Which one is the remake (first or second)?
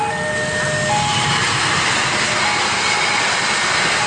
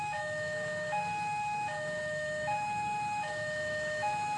second